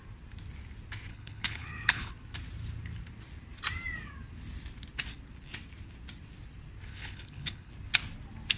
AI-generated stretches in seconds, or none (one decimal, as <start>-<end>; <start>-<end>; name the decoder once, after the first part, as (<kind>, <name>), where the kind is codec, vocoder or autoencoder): 1.1-2.1 (codec, HILCodec); 6.9-7.7